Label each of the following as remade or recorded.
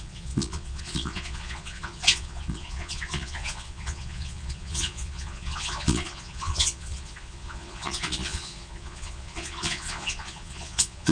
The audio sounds remade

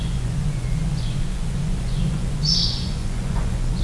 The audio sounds remade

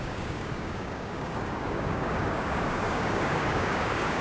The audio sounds remade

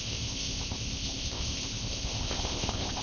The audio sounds remade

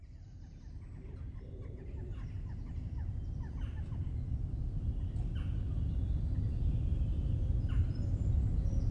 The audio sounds recorded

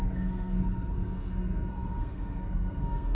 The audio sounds remade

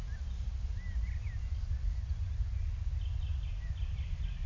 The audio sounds recorded